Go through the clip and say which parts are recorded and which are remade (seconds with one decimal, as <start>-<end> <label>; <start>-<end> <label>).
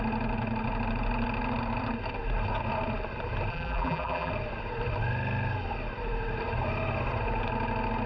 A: 0.0-3.5 recorded; 3.5-4.3 remade; 4.3-8.1 recorded